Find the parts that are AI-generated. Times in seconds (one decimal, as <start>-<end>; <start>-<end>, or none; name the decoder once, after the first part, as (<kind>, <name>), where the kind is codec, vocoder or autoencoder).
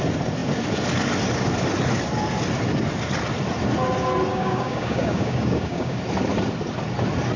4.3-6.0 (codec, DAC)